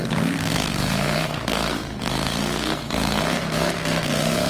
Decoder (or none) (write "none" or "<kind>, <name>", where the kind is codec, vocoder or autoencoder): codec, SNAC